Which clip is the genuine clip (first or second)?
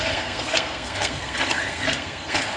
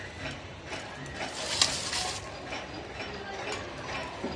second